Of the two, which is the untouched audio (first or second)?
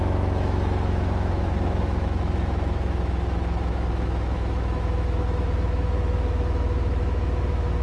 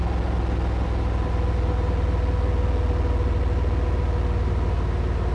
second